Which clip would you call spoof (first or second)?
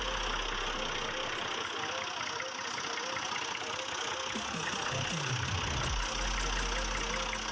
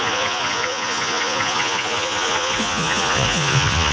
second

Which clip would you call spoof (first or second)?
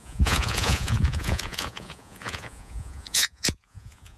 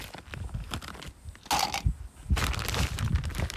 first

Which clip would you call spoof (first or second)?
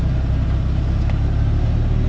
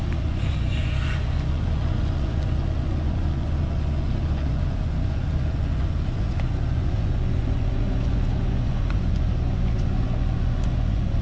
second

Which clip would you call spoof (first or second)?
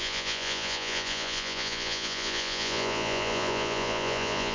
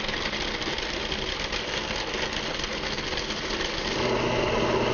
first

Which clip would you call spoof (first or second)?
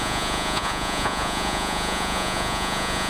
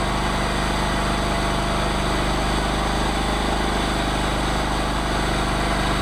first